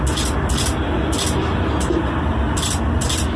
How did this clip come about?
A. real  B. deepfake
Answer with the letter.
A